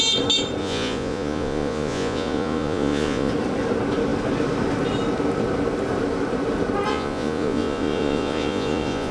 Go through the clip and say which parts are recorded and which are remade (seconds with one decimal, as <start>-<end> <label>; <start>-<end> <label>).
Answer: 0.0-0.6 recorded; 0.6-3.3 remade; 3.3-6.9 recorded; 6.9-9.1 remade